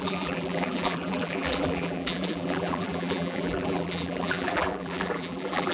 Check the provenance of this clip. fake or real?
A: fake